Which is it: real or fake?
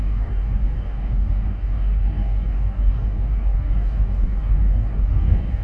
fake